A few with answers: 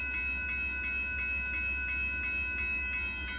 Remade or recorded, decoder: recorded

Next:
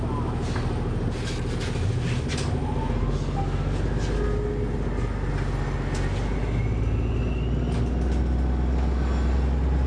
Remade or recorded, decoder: recorded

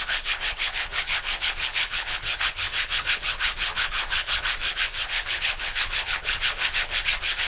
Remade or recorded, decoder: remade, codec, HILCodec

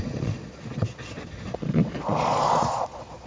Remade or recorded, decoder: remade, vocoder, Vocos